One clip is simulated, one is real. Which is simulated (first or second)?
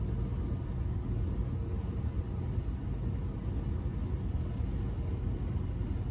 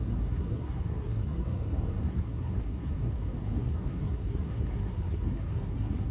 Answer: second